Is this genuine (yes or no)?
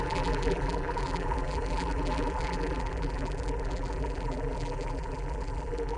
no